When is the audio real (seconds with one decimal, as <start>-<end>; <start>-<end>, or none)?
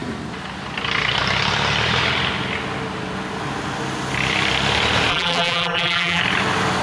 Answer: 0.0-5.1; 6.2-6.8